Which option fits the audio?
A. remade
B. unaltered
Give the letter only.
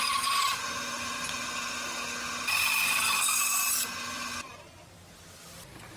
B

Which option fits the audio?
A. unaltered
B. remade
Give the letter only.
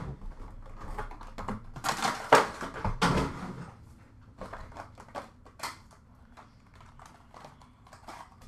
A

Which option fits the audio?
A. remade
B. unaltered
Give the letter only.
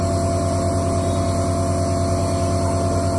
B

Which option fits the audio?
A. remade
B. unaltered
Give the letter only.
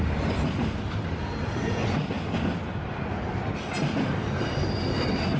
B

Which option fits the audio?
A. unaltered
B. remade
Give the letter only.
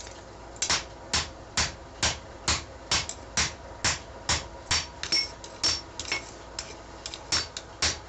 A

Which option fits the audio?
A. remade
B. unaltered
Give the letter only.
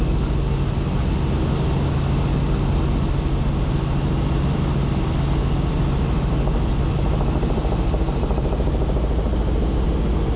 B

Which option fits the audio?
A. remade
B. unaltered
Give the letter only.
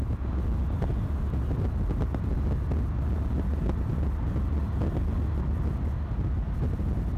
B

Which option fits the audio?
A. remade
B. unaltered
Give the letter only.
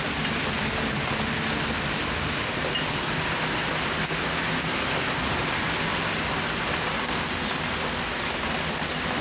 B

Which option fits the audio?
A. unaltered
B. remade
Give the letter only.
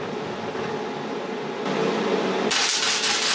A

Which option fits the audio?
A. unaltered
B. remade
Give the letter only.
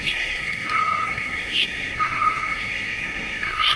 B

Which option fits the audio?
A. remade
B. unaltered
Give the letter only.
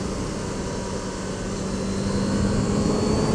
B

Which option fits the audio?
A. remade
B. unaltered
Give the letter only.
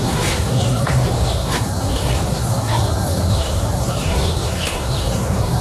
A